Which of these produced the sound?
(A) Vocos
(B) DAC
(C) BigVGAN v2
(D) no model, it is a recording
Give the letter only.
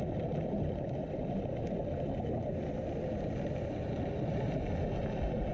D